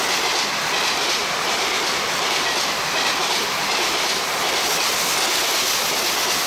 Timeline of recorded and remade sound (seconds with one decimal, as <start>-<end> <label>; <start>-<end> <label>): 0.0-1.2 recorded; 1.2-2.2 remade; 2.2-3.2 recorded; 3.2-4.9 remade; 4.9-6.5 recorded